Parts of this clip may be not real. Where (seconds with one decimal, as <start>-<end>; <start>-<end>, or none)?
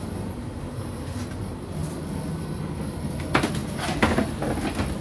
3.6-4.4